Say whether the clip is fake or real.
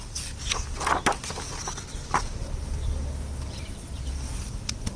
real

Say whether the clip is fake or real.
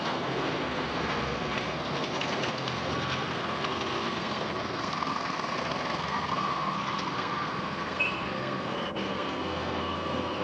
fake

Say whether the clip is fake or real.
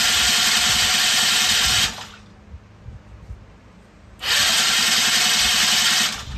real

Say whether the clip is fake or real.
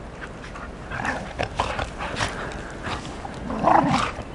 real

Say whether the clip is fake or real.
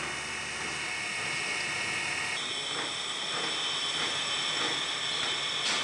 real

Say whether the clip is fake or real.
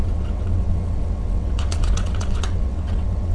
fake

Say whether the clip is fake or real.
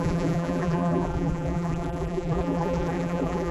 fake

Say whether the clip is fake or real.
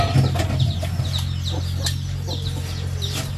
real